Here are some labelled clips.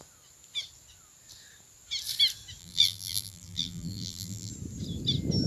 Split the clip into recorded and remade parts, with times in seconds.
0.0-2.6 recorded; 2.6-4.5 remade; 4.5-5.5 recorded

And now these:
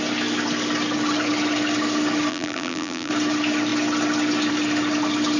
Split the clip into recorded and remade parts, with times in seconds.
0.0-2.3 recorded; 2.3-3.1 remade; 3.1-5.4 recorded

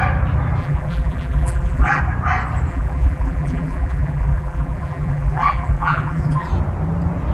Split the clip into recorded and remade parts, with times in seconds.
0.0-0.6 recorded; 0.6-2.0 remade; 2.0-2.7 recorded; 2.7-6.5 remade; 6.5-7.3 recorded

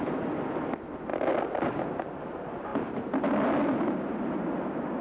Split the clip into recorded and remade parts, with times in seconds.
0.0-5.0 recorded

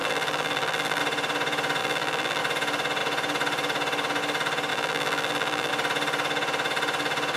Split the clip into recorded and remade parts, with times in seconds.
0.0-1.0 remade; 1.0-1.8 recorded; 1.8-2.4 remade; 2.4-4.7 recorded; 4.7-5.7 remade; 5.7-7.4 recorded

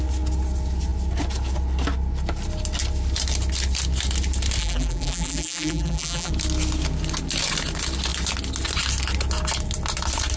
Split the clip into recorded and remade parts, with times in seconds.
0.0-4.6 recorded; 4.6-6.3 remade; 6.3-10.4 recorded